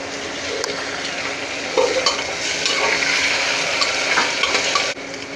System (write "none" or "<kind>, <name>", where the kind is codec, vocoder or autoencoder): none